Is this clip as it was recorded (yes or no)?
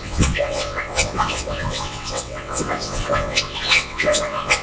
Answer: no